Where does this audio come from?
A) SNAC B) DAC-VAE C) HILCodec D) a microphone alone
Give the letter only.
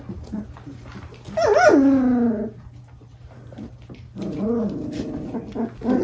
D